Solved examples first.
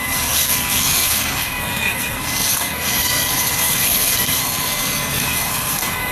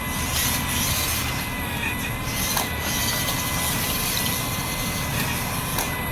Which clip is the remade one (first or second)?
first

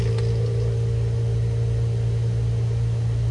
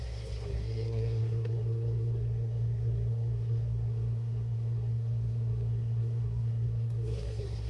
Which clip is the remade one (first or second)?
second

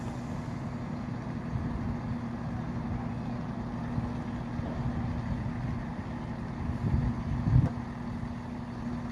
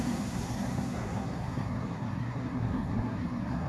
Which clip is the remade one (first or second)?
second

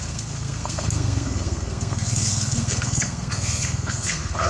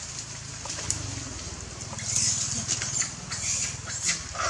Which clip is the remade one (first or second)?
first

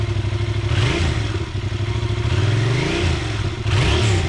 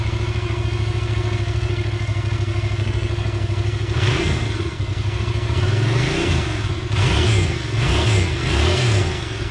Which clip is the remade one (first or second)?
second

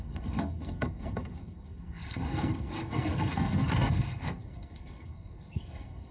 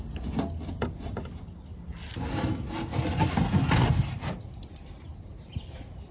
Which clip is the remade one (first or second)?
first